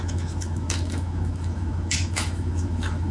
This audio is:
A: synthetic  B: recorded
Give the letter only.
A